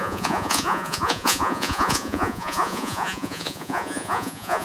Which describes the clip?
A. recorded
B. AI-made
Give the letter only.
B